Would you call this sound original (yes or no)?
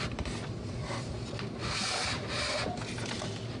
no